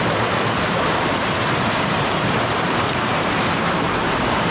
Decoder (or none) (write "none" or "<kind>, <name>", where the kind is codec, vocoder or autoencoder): vocoder, BigVGAN v2